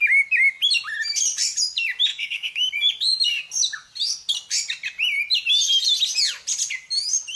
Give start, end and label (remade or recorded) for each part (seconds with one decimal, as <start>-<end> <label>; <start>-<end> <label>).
0.0-2.1 recorded; 2.1-2.7 remade; 2.7-7.4 recorded